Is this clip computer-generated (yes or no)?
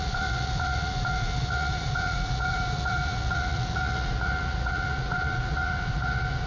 yes